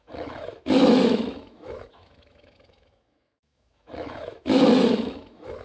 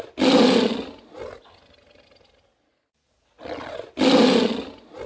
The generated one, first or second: first